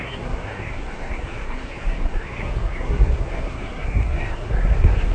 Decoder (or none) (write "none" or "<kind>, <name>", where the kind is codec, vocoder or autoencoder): codec, SNAC